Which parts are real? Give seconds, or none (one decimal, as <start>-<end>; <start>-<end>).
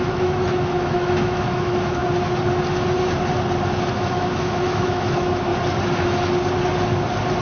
2.0-3.9; 5.5-7.4